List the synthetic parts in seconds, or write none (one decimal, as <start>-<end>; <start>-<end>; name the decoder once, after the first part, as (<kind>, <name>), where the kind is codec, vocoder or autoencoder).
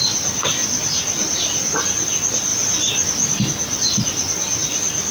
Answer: none